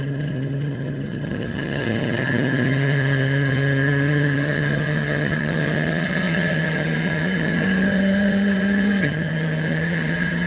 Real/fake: fake